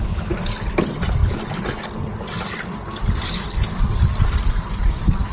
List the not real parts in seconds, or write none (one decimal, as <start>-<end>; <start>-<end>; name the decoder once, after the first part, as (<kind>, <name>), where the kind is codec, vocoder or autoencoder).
none